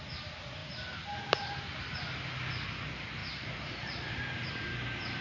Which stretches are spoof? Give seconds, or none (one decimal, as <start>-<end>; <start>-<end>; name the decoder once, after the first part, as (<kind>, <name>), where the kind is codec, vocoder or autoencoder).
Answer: 0.6-1.6 (vocoder, BigVGAN v2); 3.2-4.5